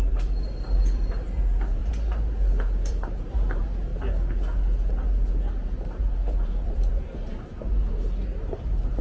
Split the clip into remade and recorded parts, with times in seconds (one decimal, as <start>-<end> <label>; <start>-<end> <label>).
0.0-1.8 remade; 1.8-2.9 recorded; 2.9-3.9 remade; 3.9-5.5 recorded; 5.5-6.9 remade; 6.9-7.6 recorded; 7.6-9.0 remade

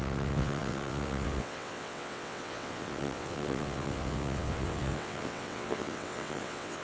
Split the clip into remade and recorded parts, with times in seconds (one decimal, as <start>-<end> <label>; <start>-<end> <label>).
0.0-6.8 remade

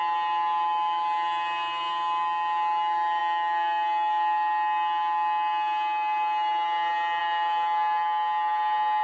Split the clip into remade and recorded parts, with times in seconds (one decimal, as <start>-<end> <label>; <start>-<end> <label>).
0.0-9.0 recorded

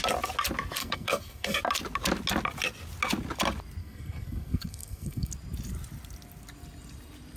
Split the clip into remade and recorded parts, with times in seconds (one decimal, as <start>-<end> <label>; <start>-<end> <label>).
0.0-0.8 recorded; 0.8-1.6 remade; 1.6-3.8 recorded; 3.8-5.3 remade; 5.3-7.4 recorded

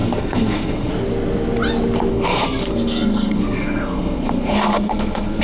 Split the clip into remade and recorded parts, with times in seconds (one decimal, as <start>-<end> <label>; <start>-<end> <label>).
0.0-0.9 remade; 0.9-2.1 recorded; 2.1-5.4 remade

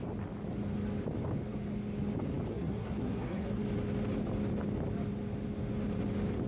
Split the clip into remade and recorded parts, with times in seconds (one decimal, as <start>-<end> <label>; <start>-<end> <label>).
0.0-2.5 recorded; 2.5-3.6 remade; 3.6-6.5 recorded

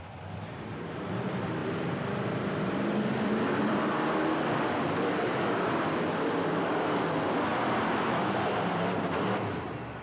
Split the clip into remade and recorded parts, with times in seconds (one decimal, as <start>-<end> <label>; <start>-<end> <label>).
0.0-10.0 remade